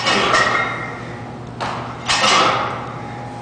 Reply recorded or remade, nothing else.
recorded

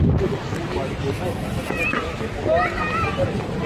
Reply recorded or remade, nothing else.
recorded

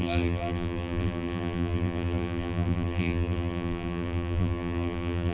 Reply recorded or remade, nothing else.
remade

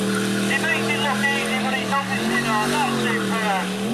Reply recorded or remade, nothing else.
recorded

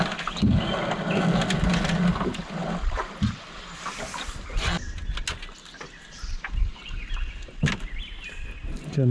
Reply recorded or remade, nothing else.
recorded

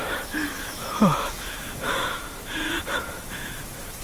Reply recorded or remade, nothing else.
remade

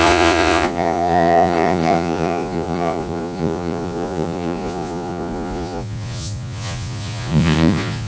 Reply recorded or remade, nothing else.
remade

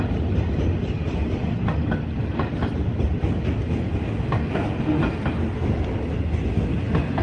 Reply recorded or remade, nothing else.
recorded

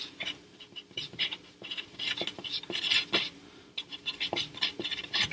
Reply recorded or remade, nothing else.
remade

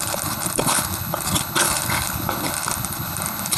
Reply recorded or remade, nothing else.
remade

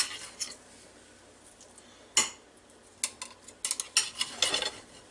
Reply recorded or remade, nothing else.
recorded